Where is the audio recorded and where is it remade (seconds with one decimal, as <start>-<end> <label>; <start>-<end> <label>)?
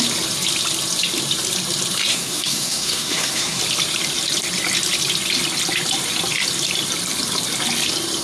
0.0-2.1 recorded; 2.1-3.6 remade; 3.6-8.2 recorded